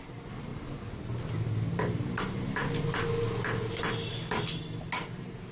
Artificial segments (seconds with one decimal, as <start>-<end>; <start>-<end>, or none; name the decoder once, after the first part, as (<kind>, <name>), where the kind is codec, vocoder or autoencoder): none